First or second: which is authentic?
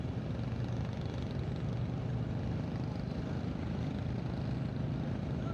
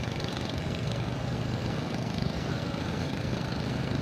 first